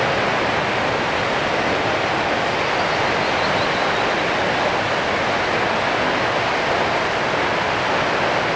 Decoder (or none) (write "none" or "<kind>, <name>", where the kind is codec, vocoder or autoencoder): none